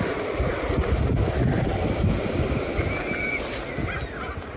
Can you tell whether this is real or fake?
real